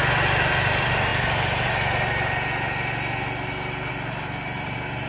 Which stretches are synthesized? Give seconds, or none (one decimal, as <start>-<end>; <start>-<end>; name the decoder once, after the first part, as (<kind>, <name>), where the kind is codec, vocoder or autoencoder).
none